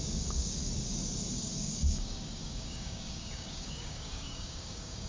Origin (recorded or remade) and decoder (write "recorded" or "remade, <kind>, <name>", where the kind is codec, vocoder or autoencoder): remade, codec, DAC